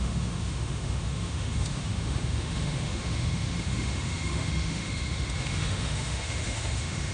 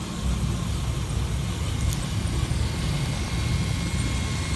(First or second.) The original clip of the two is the second